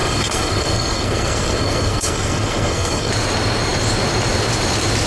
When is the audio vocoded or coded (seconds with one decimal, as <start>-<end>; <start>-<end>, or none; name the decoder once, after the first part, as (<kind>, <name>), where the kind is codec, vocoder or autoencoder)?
0.0-3.1 (codec, SNAC)